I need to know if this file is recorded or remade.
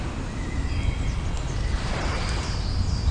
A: recorded